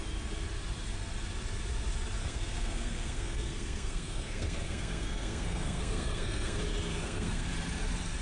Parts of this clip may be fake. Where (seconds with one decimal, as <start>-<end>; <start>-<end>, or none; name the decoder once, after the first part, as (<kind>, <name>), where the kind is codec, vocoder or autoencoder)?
2.2-6.6 (codec, SNAC); 7.0-7.5